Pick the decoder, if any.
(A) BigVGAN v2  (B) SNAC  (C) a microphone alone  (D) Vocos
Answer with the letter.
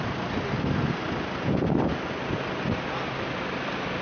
C